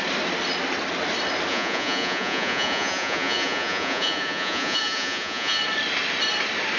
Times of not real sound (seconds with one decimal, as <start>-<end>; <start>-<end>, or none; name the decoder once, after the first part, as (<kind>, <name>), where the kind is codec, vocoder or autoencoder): 1.5-5.6 (vocoder, Vocos)